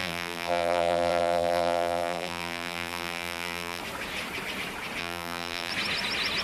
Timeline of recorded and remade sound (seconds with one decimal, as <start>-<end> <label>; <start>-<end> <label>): 0.0-3.8 remade; 3.8-5.0 recorded; 5.0-5.7 remade; 5.7-6.4 recorded